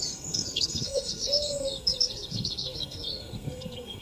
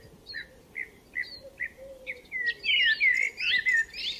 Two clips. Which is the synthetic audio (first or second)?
first